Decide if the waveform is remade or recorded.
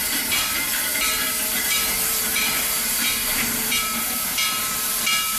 remade